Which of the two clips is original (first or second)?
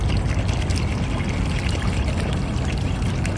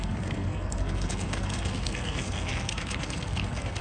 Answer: first